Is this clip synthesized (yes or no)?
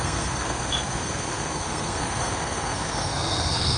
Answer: yes